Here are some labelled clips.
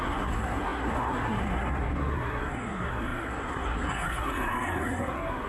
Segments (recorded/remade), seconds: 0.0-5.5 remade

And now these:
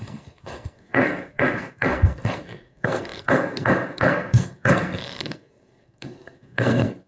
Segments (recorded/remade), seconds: 0.0-7.1 remade